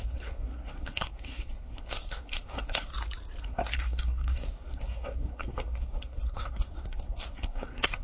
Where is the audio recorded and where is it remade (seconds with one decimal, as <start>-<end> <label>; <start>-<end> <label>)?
0.0-2.9 remade; 2.9-3.4 recorded; 3.4-8.0 remade